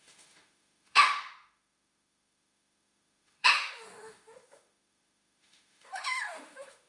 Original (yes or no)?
no